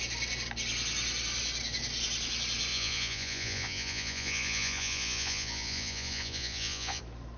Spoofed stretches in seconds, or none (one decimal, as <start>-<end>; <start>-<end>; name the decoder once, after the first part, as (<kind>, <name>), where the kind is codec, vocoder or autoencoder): 2.7-7.0 (vocoder, Vocos)